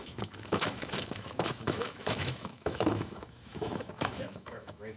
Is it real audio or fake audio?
fake